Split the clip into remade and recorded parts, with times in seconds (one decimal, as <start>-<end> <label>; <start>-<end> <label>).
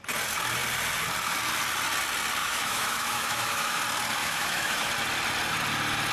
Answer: 0.0-2.4 recorded; 2.4-3.8 remade; 3.8-4.2 recorded; 4.2-4.9 remade; 4.9-6.1 recorded